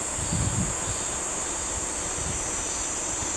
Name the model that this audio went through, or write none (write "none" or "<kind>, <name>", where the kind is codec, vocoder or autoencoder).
none